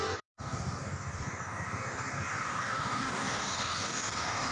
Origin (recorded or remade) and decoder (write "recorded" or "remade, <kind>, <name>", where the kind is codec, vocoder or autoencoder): remade, codec, DAC